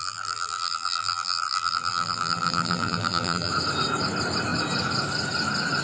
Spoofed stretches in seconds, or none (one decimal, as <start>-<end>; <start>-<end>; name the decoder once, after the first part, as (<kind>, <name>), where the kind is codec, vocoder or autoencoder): 0.0-3.5 (vocoder, BigVGAN v2)